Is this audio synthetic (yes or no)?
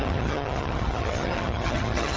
yes